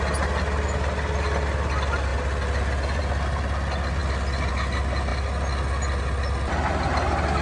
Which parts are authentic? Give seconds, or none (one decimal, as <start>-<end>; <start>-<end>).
0.0-7.4